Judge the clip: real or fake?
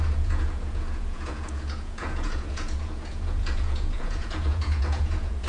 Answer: fake